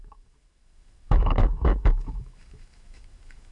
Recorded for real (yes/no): no